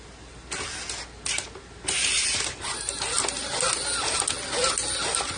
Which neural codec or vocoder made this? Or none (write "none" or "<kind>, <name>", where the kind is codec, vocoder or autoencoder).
none